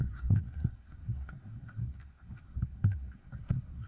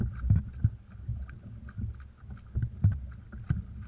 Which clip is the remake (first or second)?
first